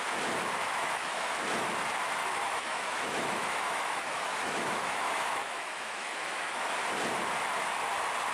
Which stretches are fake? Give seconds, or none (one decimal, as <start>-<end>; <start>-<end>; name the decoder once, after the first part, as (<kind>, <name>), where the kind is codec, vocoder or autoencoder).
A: 0.6-1.4 (autoencoder, DAC-VAE); 2.2-6.7